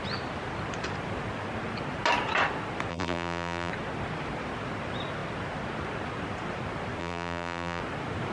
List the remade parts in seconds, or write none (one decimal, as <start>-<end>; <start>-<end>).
2.9-3.7; 7.0-7.8